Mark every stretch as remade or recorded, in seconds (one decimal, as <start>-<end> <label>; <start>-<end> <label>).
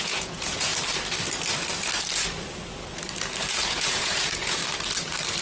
0.0-0.7 remade; 0.7-3.5 recorded; 3.5-4.6 remade; 4.6-5.4 recorded